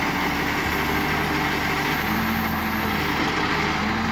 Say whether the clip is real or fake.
real